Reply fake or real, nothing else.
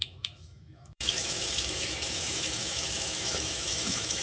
fake